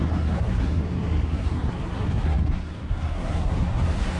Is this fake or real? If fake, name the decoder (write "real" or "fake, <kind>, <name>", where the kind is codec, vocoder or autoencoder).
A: fake, codec, SNAC